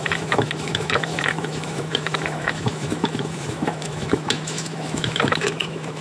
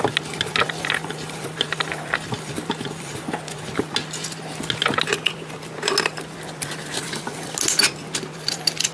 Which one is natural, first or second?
second